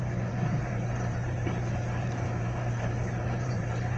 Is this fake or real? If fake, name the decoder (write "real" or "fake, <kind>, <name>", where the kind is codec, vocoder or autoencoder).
fake, vocoder, BigVGAN v2